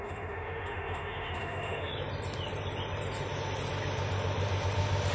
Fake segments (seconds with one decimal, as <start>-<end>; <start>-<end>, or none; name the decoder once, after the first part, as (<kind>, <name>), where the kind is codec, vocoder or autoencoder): 0.0-1.9 (autoencoder, DAC-VAE)